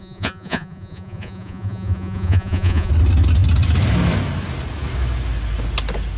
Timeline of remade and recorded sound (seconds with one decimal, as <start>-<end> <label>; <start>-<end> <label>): 0.0-2.9 remade; 2.9-6.2 recorded